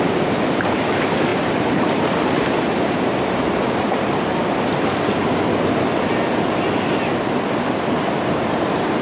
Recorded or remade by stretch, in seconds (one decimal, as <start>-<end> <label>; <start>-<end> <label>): 0.0-4.3 remade; 4.3-8.1 recorded; 8.1-9.0 remade